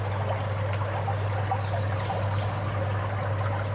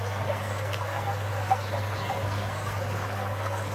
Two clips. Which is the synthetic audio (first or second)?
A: second